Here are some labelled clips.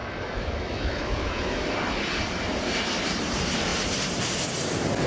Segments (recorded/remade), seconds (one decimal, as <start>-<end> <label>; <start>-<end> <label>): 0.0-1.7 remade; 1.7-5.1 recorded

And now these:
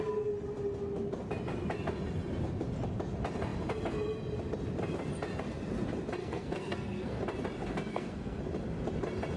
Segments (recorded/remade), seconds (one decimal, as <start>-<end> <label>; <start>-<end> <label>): 0.0-6.2 recorded; 6.2-7.2 remade; 7.2-7.9 recorded; 7.9-8.4 remade; 8.4-9.4 recorded

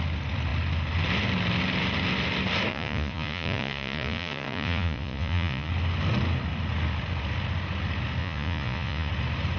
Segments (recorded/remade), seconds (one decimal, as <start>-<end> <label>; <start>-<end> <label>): 0.0-2.7 recorded; 2.7-5.7 remade; 5.7-8.2 recorded; 8.2-9.1 remade; 9.1-9.6 recorded

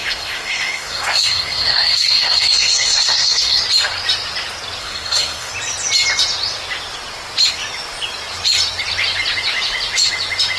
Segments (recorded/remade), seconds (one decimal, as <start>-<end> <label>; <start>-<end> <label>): 0.0-3.6 remade; 3.6-4.8 recorded; 4.8-5.5 remade; 5.5-10.6 recorded